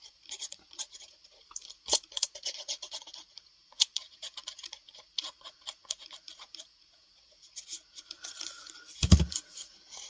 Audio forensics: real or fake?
fake